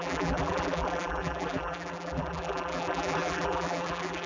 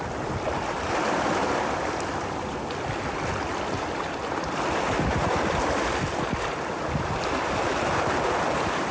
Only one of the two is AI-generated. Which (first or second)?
first